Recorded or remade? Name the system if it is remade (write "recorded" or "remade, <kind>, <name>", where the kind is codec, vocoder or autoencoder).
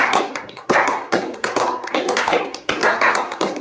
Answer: remade, codec, SNAC